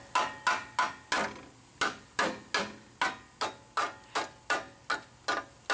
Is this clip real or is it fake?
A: real